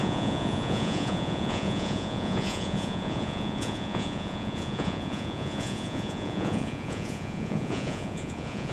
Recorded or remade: remade